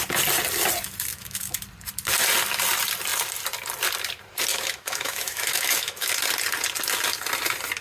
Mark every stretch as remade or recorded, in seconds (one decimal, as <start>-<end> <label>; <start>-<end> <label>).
0.0-1.1 recorded; 1.1-1.6 remade; 1.6-4.5 recorded; 4.5-6.1 remade; 6.1-7.8 recorded